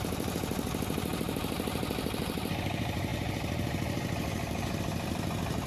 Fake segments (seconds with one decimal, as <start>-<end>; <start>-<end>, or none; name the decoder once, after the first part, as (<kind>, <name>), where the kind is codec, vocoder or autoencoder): 0.0-5.7 (vocoder, BigVGAN v2)